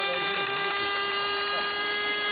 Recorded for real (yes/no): no